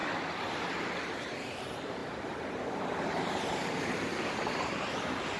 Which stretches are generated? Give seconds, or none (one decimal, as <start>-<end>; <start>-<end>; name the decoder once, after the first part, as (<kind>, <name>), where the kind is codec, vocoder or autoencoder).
0.6-2.0 (vocoder, BigVGAN v2); 2.8-4.1; 4.6-5.4